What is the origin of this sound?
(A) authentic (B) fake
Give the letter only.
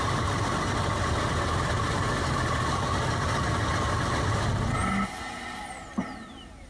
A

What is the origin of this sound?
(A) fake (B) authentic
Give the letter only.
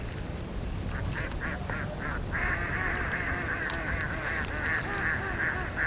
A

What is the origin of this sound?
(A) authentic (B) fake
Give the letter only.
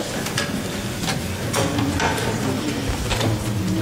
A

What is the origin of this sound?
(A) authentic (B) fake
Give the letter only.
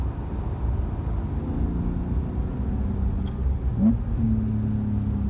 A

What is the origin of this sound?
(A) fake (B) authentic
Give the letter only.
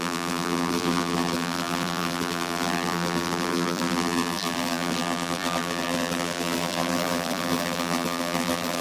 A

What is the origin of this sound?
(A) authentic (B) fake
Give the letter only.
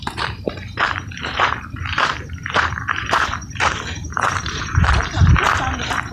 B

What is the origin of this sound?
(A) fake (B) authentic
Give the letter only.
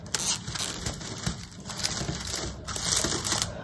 B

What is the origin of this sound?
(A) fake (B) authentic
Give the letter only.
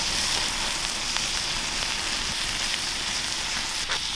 B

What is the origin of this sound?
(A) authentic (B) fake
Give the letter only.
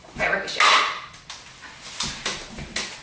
A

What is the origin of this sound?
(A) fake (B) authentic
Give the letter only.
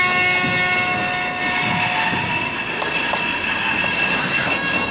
B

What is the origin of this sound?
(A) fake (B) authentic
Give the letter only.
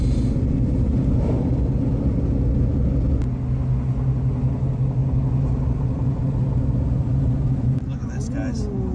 B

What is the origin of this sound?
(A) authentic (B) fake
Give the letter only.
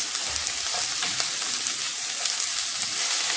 A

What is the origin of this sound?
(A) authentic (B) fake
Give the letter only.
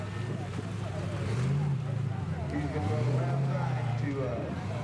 A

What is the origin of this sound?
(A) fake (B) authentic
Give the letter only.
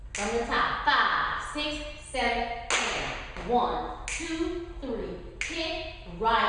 B